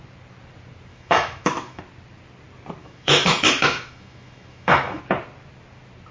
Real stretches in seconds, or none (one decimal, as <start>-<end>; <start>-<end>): 0.0-0.9; 1.8-2.8; 5.0-6.1